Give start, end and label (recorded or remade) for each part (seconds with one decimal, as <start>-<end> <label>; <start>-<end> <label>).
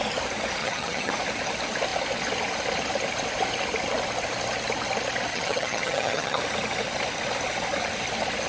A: 0.0-0.6 recorded; 0.6-1.1 remade; 1.1-5.3 recorded; 5.3-6.4 remade; 6.4-8.5 recorded